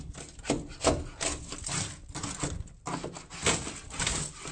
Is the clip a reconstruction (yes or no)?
no